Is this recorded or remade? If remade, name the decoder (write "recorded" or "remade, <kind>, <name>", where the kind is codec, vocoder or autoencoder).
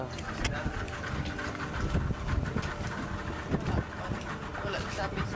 recorded